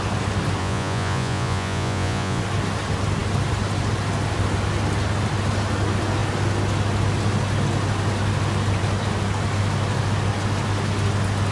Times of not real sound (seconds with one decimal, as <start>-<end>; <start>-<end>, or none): 0.6-2.4